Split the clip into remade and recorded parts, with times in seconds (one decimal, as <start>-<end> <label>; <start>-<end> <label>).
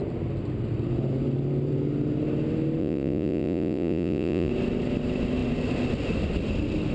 0.0-2.8 recorded; 2.8-4.5 remade; 4.5-6.9 recorded